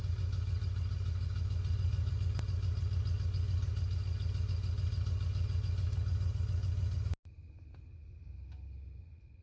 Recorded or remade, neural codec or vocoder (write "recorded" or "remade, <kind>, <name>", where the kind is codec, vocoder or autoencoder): recorded